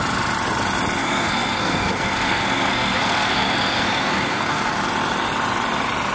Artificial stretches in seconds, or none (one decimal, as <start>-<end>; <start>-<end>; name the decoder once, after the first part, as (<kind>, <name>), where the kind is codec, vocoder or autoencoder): 1.0-4.7 (codec, SNAC)